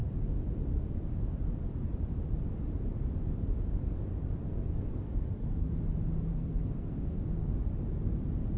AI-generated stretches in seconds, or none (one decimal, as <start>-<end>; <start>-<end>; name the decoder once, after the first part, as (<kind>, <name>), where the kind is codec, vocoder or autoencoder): 4.4-5.7 (codec, SNAC); 6.3-7.6